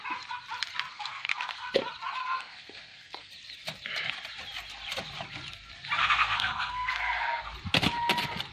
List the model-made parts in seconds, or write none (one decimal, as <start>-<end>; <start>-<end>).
0.9-1.7; 2.2-3.3; 6.0-7.4